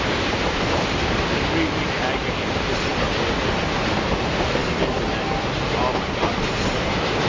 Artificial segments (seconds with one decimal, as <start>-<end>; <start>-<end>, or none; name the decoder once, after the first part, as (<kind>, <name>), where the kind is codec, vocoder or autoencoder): none